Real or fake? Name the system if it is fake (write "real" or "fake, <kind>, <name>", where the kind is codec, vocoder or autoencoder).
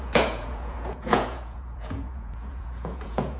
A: fake, vocoder, Vocos